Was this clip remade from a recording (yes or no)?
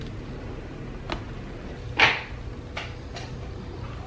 no